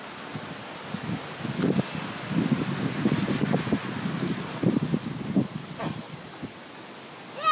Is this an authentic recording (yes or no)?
yes